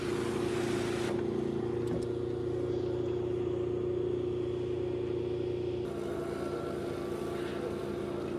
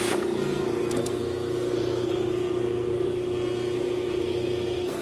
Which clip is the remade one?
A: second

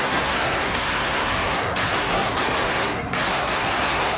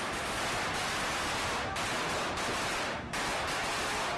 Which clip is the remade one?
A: first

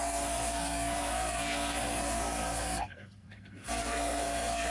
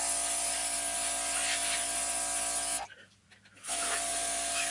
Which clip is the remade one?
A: first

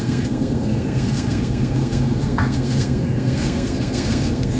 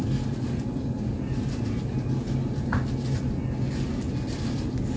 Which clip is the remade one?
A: first